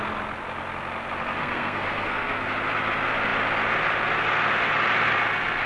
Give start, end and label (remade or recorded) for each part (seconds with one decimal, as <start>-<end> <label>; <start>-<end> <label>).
0.0-1.4 recorded; 1.4-2.4 remade; 2.4-5.7 recorded